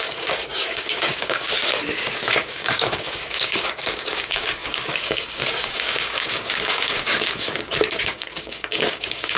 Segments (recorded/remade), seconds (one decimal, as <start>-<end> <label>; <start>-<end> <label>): 0.0-9.4 remade